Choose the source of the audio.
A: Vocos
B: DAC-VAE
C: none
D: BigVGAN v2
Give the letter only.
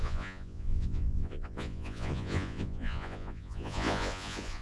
A